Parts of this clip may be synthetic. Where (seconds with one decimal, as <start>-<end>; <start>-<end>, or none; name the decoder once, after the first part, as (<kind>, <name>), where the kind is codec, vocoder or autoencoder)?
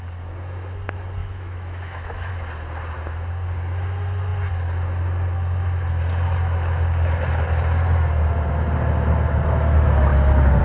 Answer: 1.2-2.3 (autoencoder, DAC-VAE)